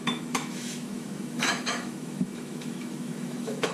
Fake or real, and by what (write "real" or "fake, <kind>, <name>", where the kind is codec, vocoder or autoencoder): fake, autoencoder, DAC-VAE